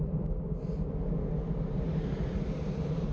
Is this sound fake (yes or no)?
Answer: no